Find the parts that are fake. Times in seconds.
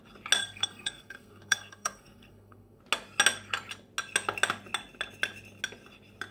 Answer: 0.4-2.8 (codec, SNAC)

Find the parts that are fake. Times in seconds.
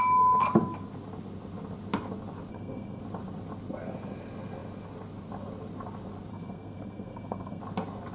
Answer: 2.5-3.0 (codec, SNAC); 6.3-7.6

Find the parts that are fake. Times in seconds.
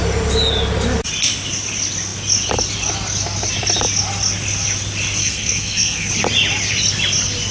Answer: 5.2-6.1 (codec, SNAC)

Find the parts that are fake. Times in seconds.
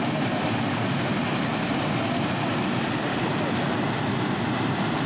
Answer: none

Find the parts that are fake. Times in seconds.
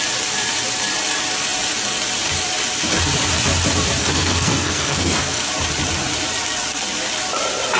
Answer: 4.0-5.5 (codec, SNAC)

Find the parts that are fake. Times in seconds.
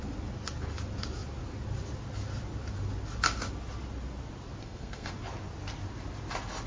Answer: 4.6-5.1 (codec, SNAC)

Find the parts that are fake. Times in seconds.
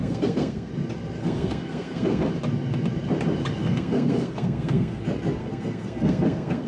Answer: 0.0-0.7 (codec, SNAC); 1.2-2.3; 3.6-5.0; 5.4-6.7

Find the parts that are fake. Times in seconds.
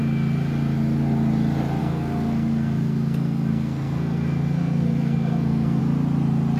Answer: 1.8-5.8 (codec, SNAC)